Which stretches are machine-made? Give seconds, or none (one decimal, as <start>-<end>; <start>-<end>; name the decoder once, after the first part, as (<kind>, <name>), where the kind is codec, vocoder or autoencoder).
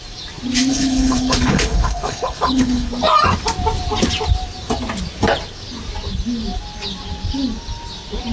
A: 0.7-2.9 (codec, HILCodec)